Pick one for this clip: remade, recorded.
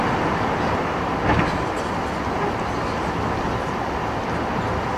recorded